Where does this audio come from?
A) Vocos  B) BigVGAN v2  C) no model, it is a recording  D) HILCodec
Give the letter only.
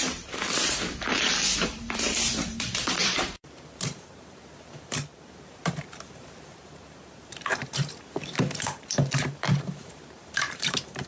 B